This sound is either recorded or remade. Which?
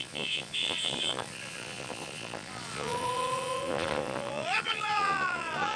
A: remade